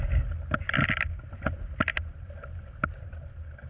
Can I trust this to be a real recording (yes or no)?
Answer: yes